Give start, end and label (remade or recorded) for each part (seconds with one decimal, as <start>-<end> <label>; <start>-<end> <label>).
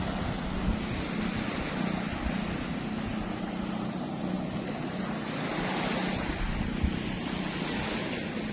0.0-8.5 recorded